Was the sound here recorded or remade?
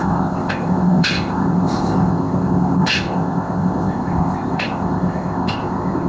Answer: remade